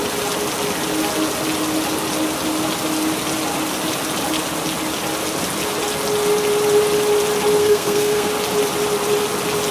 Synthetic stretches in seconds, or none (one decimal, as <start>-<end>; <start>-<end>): 7.6-8.3